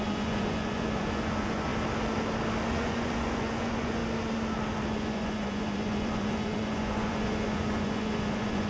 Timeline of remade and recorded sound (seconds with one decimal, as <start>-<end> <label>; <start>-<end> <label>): 0.0-1.7 remade; 1.7-2.7 recorded; 2.7-4.0 remade; 4.0-4.9 recorded; 4.9-8.7 remade